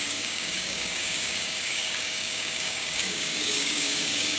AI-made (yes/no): yes